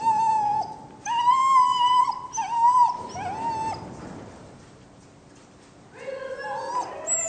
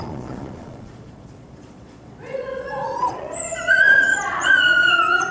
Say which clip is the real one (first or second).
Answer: first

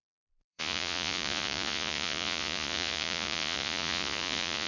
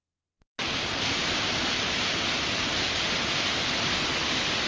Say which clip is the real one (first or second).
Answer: second